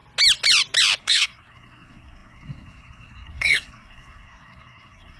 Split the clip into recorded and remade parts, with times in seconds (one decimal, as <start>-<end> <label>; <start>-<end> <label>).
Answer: 0.0-1.0 recorded; 1.0-5.2 remade